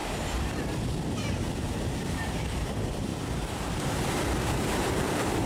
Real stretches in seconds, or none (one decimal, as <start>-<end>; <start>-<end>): 0.0-1.3; 3.1-4.5